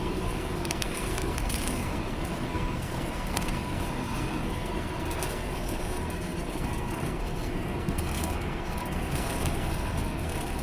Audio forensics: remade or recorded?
remade